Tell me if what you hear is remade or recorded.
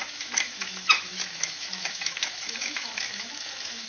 remade